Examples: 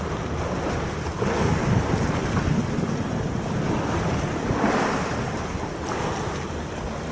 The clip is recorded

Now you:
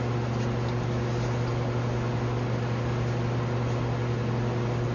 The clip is recorded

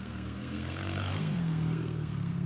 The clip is remade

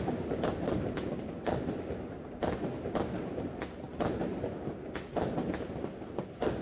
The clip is recorded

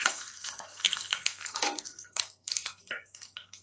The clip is remade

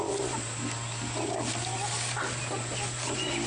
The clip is recorded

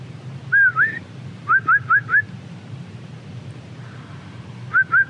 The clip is recorded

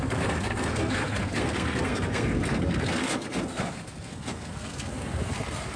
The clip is remade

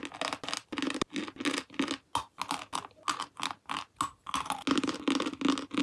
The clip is recorded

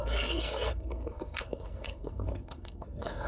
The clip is remade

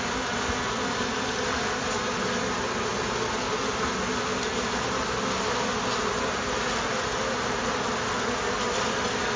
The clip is recorded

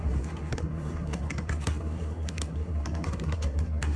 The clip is remade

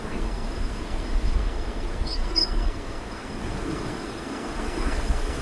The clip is remade